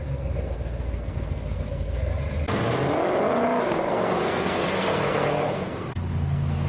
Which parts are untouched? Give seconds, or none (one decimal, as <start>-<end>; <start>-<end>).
2.1-3.6